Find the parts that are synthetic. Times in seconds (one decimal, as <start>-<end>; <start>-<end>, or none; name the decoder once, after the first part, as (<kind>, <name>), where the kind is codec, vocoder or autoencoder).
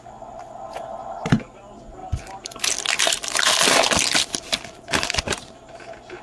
2.0-5.7 (vocoder, BigVGAN v2)